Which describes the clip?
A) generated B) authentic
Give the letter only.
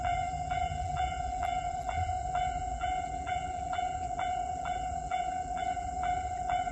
A